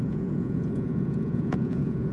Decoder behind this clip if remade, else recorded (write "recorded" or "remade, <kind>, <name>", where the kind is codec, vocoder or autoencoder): remade, vocoder, Vocos